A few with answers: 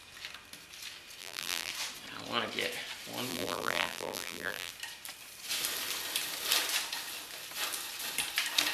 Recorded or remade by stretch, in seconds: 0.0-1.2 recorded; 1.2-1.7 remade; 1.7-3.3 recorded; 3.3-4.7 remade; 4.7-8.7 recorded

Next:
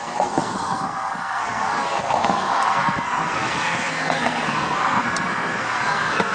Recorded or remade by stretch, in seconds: 0.0-6.3 remade

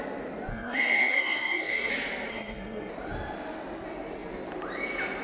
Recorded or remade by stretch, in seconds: 0.0-0.5 recorded; 0.5-1.9 remade; 1.9-2.3 recorded; 2.3-2.9 remade; 2.9-5.2 recorded

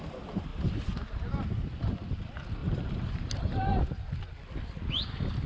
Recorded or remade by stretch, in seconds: 0.0-2.6 recorded; 2.6-3.8 remade; 3.8-5.5 recorded